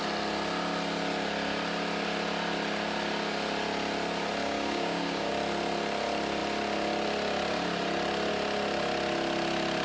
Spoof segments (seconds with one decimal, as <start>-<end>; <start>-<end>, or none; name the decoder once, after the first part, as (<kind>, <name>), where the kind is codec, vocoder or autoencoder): 4.4-5.3 (codec, DAC)